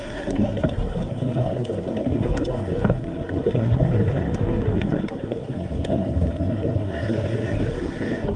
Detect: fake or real fake